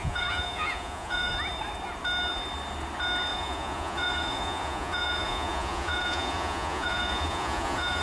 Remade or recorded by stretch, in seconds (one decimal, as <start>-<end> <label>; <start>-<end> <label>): 0.0-1.3 remade; 1.3-3.3 recorded; 3.3-8.0 remade